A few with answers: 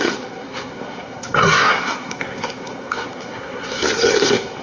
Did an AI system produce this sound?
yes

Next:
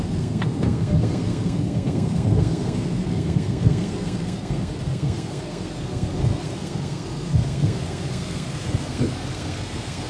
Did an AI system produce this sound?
yes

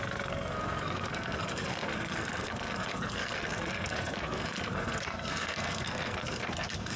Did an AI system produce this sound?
yes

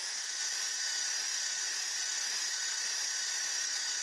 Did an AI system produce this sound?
no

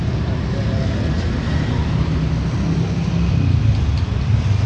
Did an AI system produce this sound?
no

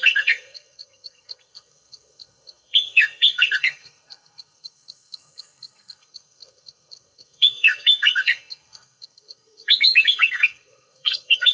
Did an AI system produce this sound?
yes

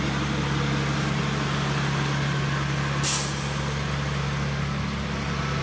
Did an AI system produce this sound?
no